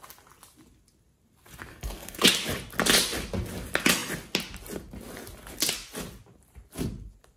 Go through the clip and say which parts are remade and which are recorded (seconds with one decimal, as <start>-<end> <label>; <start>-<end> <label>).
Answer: 0.0-1.7 recorded; 1.7-2.3 remade; 2.3-7.4 recorded